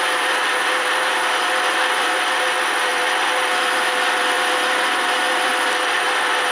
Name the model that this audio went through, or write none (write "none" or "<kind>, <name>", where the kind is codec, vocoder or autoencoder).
vocoder, BigVGAN v2